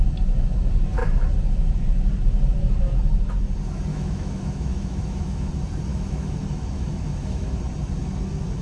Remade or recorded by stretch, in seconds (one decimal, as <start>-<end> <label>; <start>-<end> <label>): 0.0-3.9 recorded; 3.9-5.5 remade; 5.5-5.9 recorded; 5.9-7.6 remade; 7.6-8.6 recorded

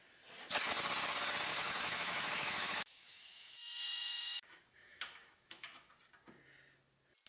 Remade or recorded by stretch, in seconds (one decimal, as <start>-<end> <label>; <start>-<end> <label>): 0.0-1.5 recorded; 1.5-5.9 remade; 5.9-7.3 recorded